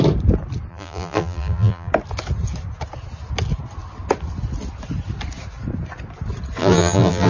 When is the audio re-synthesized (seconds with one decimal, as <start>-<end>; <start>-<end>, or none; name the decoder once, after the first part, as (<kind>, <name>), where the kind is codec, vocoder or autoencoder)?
0.7-1.9 (vocoder, BigVGAN v2); 6.6-7.3